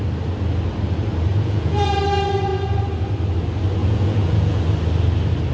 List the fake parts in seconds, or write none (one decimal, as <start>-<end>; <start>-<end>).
1.3-2.0; 3.8-4.6